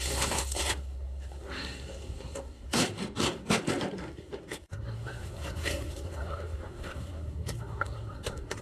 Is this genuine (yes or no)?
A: no